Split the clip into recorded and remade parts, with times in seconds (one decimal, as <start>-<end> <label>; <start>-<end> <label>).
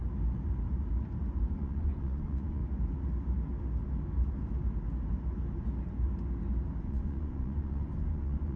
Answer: 0.0-1.5 recorded; 1.5-2.6 remade; 2.6-6.8 recorded; 6.8-8.6 remade